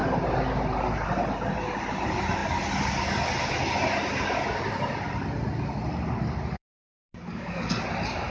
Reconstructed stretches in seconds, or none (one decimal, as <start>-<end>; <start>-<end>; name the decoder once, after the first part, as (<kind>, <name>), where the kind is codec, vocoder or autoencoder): 6.6-7.8 (codec, DAC)